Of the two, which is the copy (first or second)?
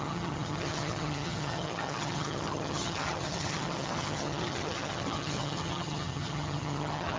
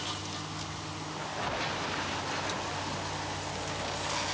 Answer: first